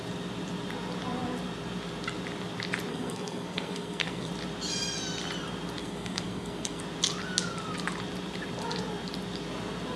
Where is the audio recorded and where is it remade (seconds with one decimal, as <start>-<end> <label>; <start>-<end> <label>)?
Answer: 0.0-2.9 recorded; 2.9-4.3 remade; 4.3-5.8 recorded; 5.8-6.8 remade; 6.8-10.0 recorded